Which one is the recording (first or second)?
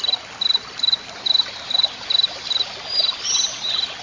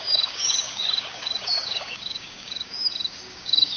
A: first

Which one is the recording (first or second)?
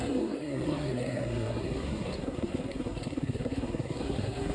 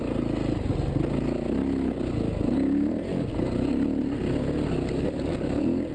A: second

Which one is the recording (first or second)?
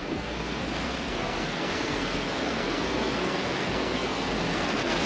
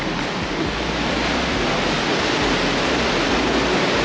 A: second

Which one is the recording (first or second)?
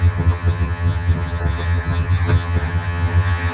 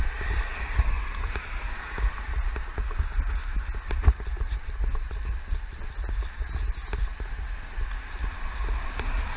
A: second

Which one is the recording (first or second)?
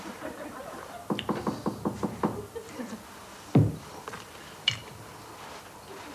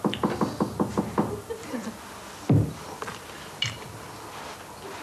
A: second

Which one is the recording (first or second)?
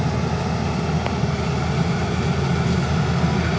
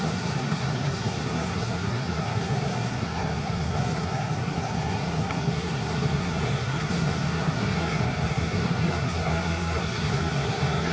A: first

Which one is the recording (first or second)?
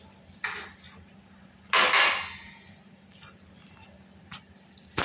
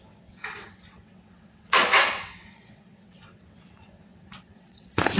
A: first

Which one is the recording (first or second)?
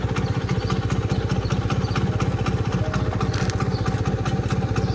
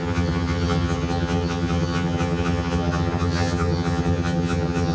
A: first